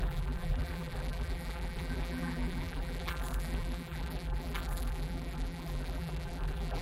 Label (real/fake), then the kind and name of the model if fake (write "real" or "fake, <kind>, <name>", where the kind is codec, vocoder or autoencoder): fake, vocoder, BigVGAN v2